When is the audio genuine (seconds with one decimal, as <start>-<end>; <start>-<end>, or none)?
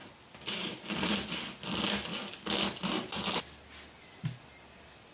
0.0-5.1